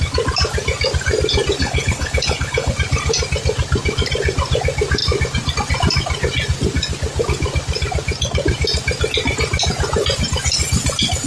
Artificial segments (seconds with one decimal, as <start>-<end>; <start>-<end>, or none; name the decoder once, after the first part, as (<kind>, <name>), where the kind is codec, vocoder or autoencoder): 1.6-2.7 (codec, HILCodec)

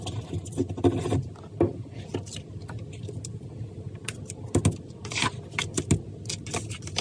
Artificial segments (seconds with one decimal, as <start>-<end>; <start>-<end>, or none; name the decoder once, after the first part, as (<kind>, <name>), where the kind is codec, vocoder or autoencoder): none

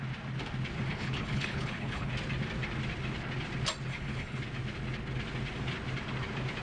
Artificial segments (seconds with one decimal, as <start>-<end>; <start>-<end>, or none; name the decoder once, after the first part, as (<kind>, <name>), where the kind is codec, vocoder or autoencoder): 0.9-2.1 (codec, HILCodec); 3.9-4.4

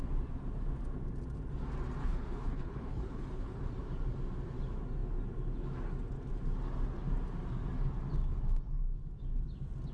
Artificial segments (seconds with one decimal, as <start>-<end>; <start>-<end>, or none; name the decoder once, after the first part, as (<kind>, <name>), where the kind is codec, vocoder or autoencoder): 2.0-3.7 (codec, HILCodec)

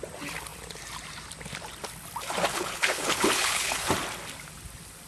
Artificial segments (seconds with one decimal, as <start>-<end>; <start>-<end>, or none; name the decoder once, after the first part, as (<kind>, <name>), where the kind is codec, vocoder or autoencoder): 2.5-3.9 (codec, HILCodec)

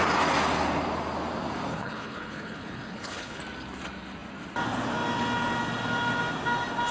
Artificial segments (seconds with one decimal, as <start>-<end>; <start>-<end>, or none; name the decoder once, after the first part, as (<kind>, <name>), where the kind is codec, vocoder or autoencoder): 1.7-3.4 (codec, HILCodec)